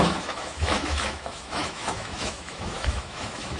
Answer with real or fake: fake